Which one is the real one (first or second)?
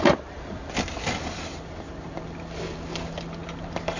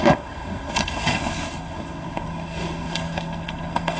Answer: first